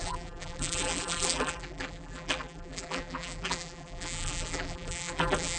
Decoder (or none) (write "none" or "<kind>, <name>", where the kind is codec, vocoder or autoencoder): vocoder, BigVGAN v2